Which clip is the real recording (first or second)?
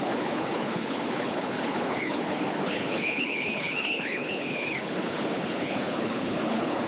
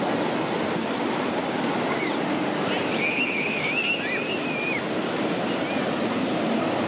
second